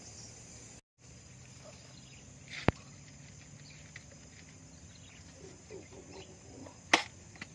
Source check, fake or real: real